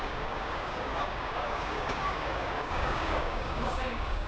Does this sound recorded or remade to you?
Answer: remade